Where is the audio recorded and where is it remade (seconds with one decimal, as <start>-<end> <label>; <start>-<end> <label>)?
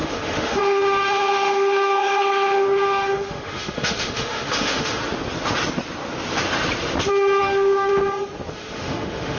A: 0.0-5.0 remade; 5.0-7.4 recorded; 7.4-7.9 remade; 7.9-8.5 recorded; 8.5-9.4 remade